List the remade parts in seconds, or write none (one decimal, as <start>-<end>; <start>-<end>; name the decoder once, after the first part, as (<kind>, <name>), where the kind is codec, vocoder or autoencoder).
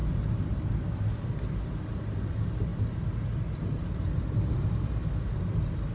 none